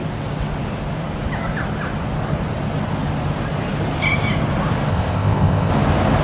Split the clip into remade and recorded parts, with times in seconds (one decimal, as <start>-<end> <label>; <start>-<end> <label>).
0.0-4.9 recorded; 4.9-5.7 remade; 5.7-6.2 recorded